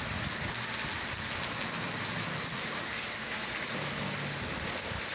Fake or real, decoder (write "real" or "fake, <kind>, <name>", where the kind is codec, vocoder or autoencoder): real